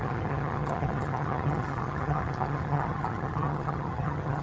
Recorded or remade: remade